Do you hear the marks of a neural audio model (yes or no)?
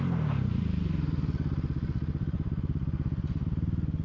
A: no